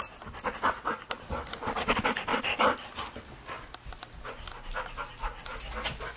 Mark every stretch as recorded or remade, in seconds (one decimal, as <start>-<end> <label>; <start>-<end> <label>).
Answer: 0.0-6.2 recorded